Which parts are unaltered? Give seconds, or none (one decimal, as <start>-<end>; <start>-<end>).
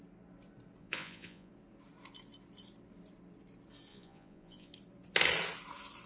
0.0-0.8; 1.5-3.9; 4.7-6.1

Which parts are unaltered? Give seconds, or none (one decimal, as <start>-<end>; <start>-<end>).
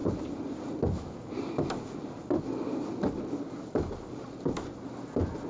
0.0-5.5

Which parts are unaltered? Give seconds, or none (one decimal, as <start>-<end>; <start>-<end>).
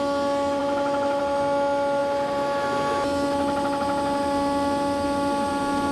0.0-5.9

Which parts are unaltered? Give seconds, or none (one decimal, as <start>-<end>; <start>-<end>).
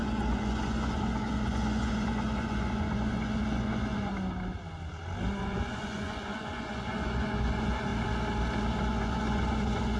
4.1-5.4; 7.9-8.8